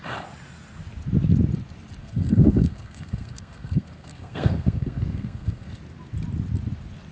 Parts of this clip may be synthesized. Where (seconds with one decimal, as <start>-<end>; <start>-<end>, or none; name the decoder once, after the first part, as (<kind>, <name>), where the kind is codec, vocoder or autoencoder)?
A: 2.0-5.8 (codec, SNAC)